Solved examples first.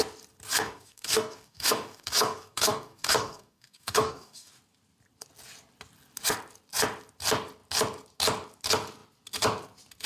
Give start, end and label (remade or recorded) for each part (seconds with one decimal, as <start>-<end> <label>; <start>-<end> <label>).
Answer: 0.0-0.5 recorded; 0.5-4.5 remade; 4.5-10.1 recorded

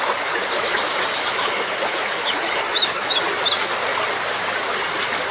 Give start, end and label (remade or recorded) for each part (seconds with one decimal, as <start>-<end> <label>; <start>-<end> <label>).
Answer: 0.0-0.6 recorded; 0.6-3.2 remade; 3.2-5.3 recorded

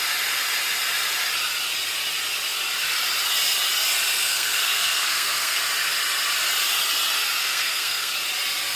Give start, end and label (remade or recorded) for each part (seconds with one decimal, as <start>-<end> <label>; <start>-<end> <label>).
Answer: 0.0-4.1 recorded; 4.1-5.6 remade; 5.6-7.4 recorded; 7.4-8.1 remade; 8.1-8.8 recorded

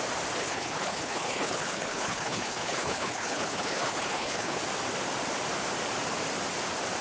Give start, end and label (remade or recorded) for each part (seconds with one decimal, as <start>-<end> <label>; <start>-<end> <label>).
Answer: 0.0-0.4 recorded; 0.4-4.6 remade; 4.6-7.0 recorded

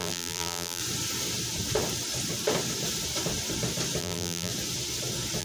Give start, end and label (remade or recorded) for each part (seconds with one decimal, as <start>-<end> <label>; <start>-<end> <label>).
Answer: 0.0-0.8 remade; 0.8-4.0 recorded; 4.0-4.5 remade; 4.5-5.4 recorded

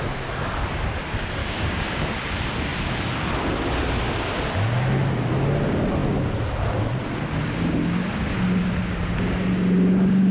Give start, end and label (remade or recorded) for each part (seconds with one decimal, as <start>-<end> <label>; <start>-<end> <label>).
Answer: 0.0-1.4 recorded; 1.4-2.1 remade; 2.1-10.3 recorded